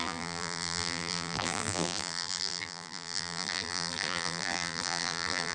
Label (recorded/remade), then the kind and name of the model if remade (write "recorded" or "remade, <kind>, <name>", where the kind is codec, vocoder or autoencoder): remade, vocoder, BigVGAN v2